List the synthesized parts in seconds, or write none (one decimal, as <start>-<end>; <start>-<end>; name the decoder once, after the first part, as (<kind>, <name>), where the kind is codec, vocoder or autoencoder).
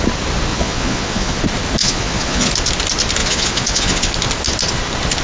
0.5-1.4 (vocoder, Vocos); 1.8-2.5; 3.2-4.1